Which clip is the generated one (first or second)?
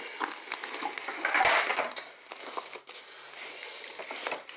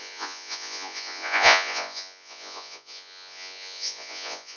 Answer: second